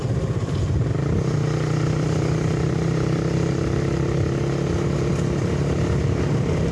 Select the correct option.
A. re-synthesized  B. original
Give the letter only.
B